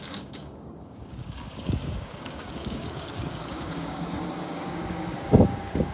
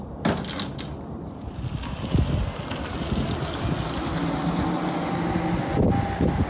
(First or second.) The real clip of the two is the second